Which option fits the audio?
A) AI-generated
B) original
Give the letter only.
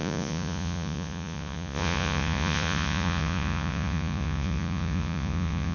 A